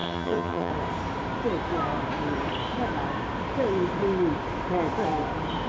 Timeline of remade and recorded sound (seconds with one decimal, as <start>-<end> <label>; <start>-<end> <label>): 0.0-0.7 remade; 0.7-5.7 recorded